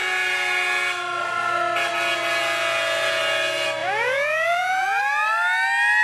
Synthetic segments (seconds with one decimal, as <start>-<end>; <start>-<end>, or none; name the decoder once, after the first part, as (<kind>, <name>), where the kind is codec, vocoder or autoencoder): 2.4-3.2 (vocoder, Vocos); 3.8-5.0